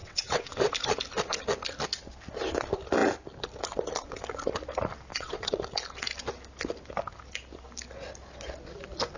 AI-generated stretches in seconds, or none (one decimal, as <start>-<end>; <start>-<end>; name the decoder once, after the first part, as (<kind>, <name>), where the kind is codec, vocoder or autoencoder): 0.0-0.7 (vocoder, WaveNeXt); 5.1-5.6